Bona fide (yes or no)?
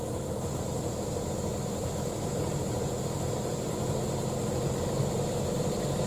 yes